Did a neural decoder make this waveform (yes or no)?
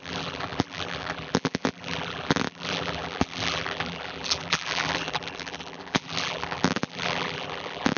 yes